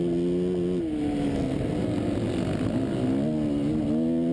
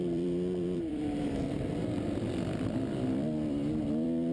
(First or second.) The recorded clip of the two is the first